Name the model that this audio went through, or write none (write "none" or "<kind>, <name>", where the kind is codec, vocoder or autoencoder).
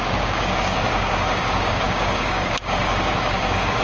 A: codec, DAC